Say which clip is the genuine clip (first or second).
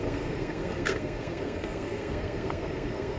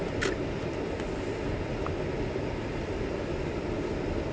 second